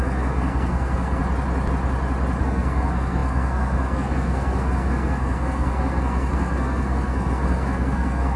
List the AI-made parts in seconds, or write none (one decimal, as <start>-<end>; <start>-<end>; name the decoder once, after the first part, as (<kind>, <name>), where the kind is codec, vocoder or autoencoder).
0.0-1.2 (codec, SNAC); 2.4-8.4